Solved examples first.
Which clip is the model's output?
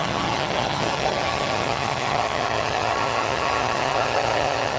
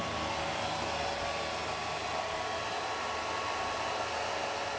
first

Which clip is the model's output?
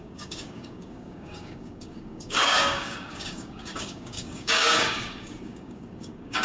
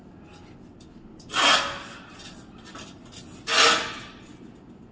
first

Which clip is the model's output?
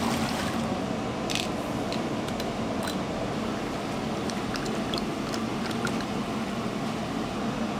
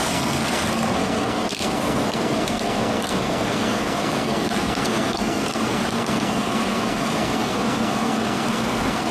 second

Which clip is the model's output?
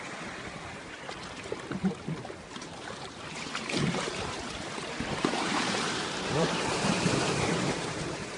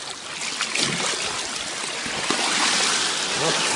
first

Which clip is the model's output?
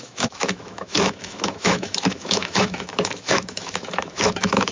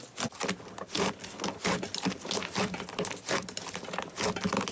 first